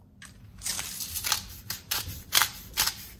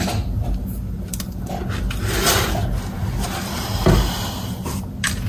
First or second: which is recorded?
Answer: second